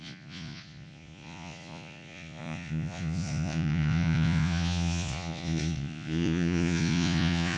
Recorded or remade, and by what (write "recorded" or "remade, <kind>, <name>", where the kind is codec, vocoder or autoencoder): remade, vocoder, Vocos